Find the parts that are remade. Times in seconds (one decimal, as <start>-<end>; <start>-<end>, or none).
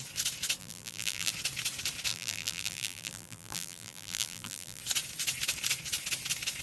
0.6-1.3; 2.1-4.8